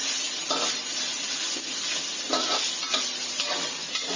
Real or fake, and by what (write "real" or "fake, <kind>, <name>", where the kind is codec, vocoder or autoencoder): real